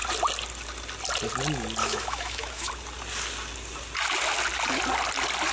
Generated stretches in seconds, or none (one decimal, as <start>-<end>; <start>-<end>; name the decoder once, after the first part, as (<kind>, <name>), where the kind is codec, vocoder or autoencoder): 1.8-2.7 (autoencoder, DAC-VAE)